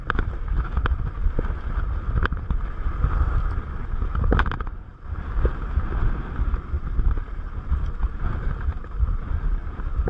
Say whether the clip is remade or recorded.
recorded